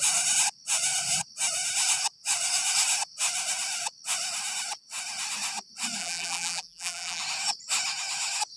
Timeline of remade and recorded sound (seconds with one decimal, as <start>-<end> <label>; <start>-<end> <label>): 0.0-6.0 recorded; 6.0-7.2 remade; 7.2-8.6 recorded

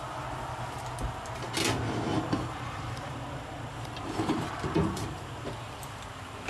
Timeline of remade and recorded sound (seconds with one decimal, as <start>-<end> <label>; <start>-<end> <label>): 0.0-2.1 recorded; 2.1-5.7 remade; 5.7-6.5 recorded

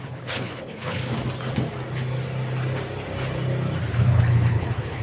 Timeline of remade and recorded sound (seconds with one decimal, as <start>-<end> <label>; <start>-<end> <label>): 0.0-1.0 remade; 1.0-4.0 recorded; 4.0-5.0 remade

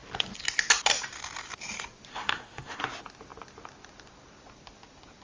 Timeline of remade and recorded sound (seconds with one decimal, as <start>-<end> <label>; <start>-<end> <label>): 0.0-2.1 recorded; 2.1-2.8 remade; 2.8-5.2 recorded

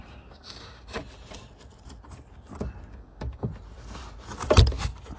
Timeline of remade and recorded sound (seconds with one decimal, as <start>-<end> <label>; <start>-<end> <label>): 0.0-1.0 remade; 1.0-2.9 recorded; 2.9-3.5 remade; 3.5-5.2 recorded